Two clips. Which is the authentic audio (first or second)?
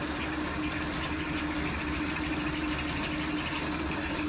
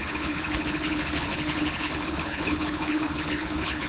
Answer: first